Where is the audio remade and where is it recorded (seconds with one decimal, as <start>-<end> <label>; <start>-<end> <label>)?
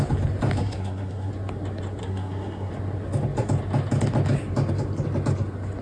0.0-0.6 recorded; 0.6-1.3 remade; 1.3-2.0 recorded; 2.0-2.7 remade; 2.7-5.8 recorded